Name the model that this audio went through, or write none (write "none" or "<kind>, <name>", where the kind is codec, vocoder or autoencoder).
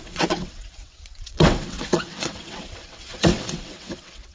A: vocoder, WaveNeXt